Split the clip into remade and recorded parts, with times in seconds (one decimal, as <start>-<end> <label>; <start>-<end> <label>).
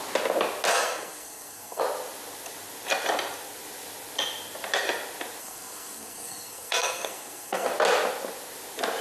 0.0-0.7 recorded; 0.7-1.8 remade; 1.8-5.4 recorded; 5.4-7.7 remade; 7.7-9.0 recorded